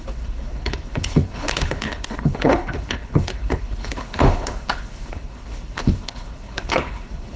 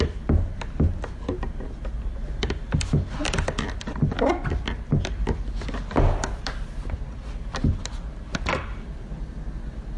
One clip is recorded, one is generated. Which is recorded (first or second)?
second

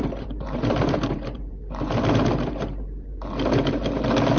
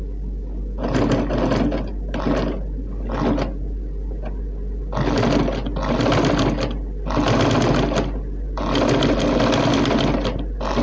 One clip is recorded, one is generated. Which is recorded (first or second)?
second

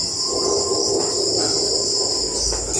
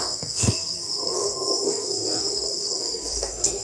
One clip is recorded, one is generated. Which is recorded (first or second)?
first